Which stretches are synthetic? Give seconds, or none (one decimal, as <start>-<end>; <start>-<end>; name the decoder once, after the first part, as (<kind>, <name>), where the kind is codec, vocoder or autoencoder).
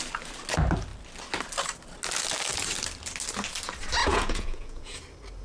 4.0-5.0 (vocoder, Vocos)